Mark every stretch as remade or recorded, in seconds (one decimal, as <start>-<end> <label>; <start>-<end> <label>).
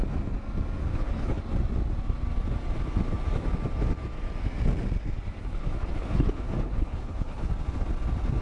0.0-0.8 recorded; 0.8-1.4 remade; 1.4-5.4 recorded; 5.4-7.5 remade; 7.5-8.4 recorded